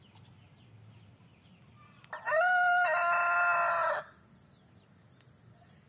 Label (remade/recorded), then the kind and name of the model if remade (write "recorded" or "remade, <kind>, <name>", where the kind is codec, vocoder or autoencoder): recorded